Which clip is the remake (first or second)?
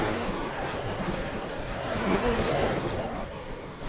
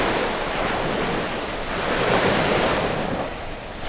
first